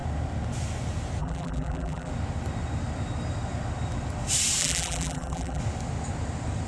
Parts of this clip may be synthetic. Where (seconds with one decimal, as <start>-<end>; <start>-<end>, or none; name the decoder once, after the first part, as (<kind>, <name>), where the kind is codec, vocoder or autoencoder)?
1.2-2.1 (vocoder, BigVGAN v2); 4.6-5.6